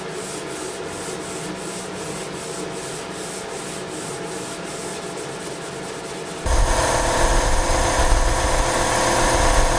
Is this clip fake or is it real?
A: real